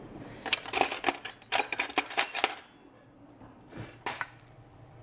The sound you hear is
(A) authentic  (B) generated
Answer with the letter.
A